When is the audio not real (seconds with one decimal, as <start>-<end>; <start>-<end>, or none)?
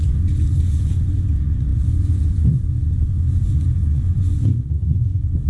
0.0-5.5